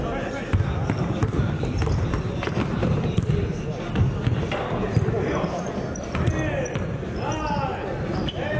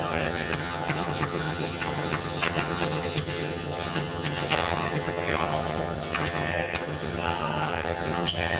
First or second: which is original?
first